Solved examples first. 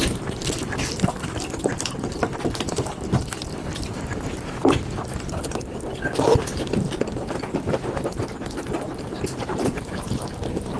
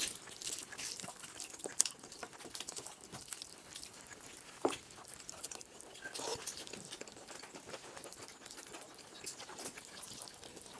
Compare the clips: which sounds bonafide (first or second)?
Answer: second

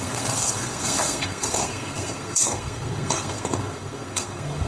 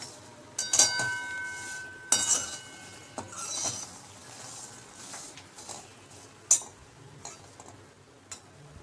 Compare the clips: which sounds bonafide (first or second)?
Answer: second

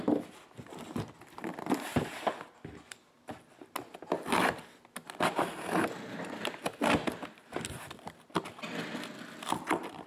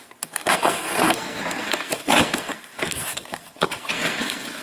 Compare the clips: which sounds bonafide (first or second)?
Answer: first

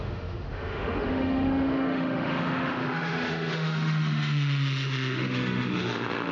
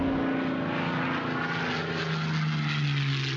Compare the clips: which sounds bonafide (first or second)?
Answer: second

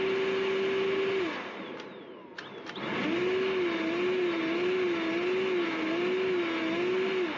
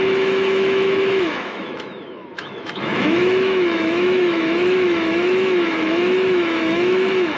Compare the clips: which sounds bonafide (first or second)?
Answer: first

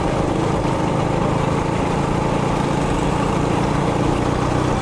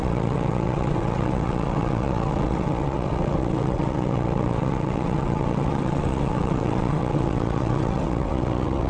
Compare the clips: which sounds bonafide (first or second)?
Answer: first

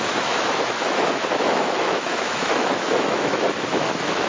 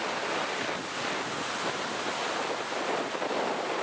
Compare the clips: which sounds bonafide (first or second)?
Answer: second